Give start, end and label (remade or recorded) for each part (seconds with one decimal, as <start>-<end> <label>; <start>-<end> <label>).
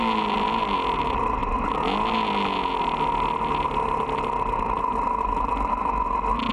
0.0-6.5 recorded